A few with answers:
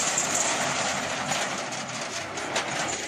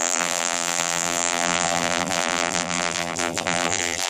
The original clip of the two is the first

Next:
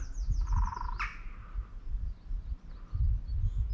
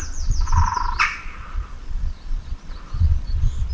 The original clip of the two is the first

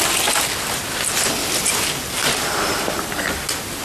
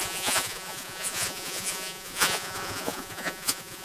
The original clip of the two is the first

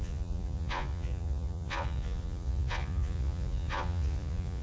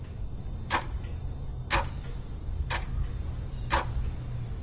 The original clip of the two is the second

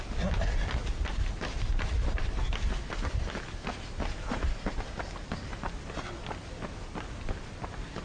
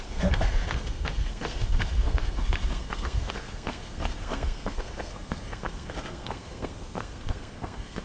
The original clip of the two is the first